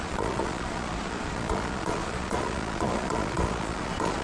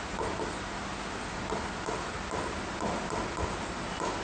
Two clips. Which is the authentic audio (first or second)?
second